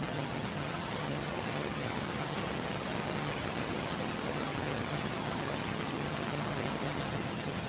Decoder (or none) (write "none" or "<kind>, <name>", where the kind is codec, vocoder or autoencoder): vocoder, HiFi-GAN